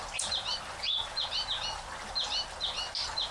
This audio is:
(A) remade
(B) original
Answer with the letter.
B